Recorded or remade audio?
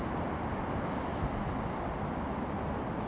recorded